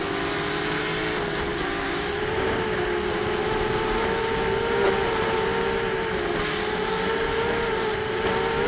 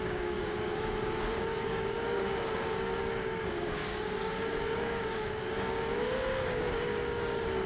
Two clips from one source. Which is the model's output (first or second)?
second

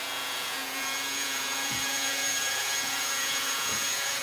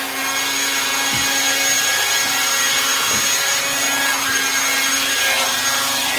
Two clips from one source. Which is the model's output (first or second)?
first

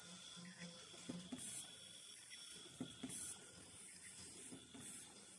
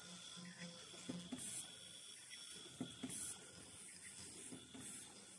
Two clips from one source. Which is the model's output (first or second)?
first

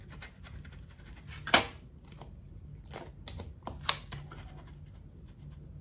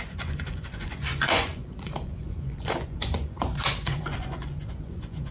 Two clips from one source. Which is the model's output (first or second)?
second